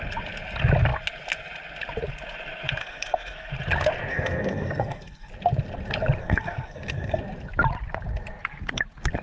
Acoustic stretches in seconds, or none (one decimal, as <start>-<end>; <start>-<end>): 0.0-2.8; 3.5-4.1; 5.3-6.2; 7.2-9.2